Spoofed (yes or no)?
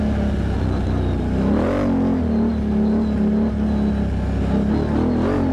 no